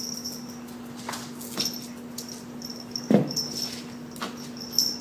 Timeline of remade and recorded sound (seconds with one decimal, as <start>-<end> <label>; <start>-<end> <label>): 0.0-5.0 recorded